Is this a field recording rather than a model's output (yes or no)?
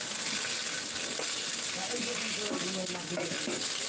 yes